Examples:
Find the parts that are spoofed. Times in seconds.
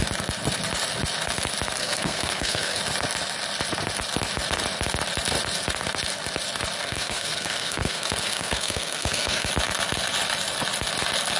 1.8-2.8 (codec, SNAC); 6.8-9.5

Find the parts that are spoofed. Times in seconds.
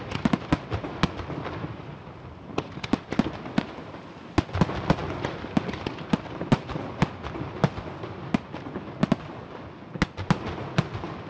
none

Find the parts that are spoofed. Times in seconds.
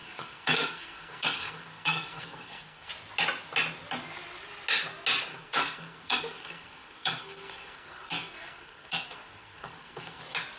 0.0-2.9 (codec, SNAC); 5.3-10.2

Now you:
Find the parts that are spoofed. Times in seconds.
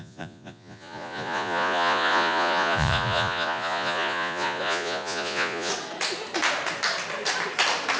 0.0-5.7 (vocoder, Vocos)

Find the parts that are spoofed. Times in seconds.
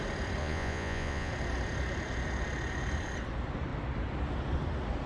0.4-1.3 (vocoder, Vocos)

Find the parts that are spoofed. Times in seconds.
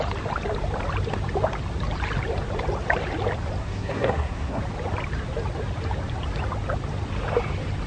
3.6-4.6 (codec, SNAC)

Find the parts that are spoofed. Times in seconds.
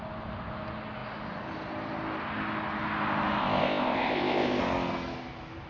3.4-4.6 (codec, ZipCodec)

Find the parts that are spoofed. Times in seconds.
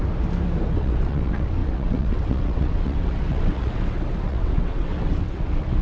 0.7-5.8 (vocoder, WaveNeXt)